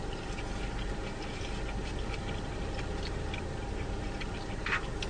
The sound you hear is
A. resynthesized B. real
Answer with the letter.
B